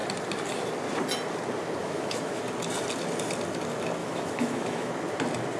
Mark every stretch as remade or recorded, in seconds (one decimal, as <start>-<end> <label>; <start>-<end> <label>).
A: 0.0-1.8 recorded; 1.8-2.4 remade; 2.4-4.0 recorded; 4.0-4.9 remade; 4.9-5.6 recorded